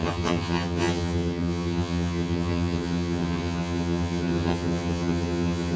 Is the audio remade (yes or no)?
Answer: yes